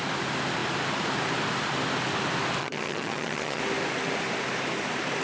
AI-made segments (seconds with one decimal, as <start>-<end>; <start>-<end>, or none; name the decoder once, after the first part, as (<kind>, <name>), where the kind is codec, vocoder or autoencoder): 2.6-3.6 (vocoder, HiFi-GAN)